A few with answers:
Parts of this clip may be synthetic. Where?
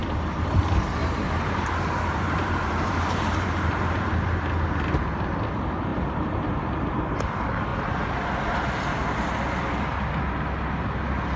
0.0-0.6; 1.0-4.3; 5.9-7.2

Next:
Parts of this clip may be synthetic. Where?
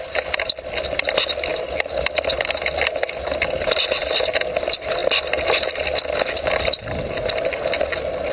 none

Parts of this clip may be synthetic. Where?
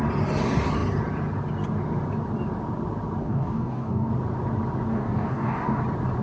3.2-4.1; 4.9-5.8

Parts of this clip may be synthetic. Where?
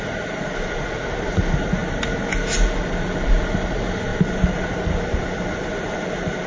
none